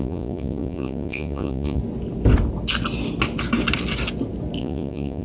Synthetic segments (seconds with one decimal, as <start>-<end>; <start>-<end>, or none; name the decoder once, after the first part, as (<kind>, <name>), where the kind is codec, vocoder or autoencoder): 0.0-1.8 (vocoder, Vocos); 4.6-5.2